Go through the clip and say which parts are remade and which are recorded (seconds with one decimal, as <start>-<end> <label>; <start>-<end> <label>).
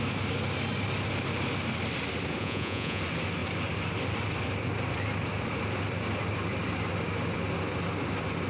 0.0-2.4 recorded; 2.4-3.0 remade; 3.0-8.5 recorded